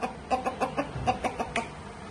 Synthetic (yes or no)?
no